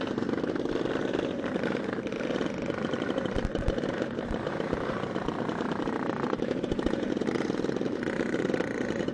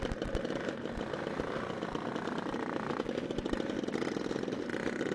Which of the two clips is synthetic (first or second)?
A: first